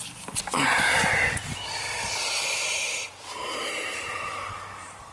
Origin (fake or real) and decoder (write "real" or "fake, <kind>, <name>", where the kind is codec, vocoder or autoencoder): fake, vocoder, BigVGAN v2